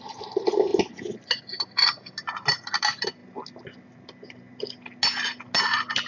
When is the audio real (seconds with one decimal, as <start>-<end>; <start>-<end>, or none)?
0.0-6.1